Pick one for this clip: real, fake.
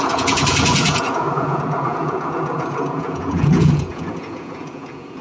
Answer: fake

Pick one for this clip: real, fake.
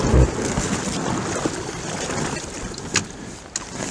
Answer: real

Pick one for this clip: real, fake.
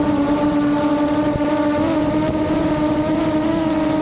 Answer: real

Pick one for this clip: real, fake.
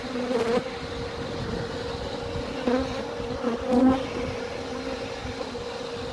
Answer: real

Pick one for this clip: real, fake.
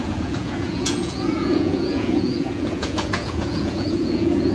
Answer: fake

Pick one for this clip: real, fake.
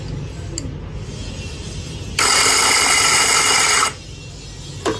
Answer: real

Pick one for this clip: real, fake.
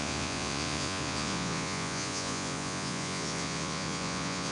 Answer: fake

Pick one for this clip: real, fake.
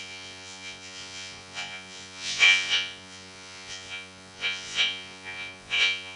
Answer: fake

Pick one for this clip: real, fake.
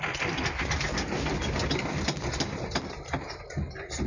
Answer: real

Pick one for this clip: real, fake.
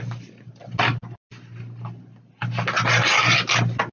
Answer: real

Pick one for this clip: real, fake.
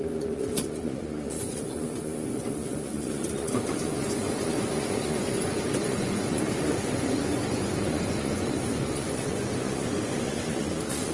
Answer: fake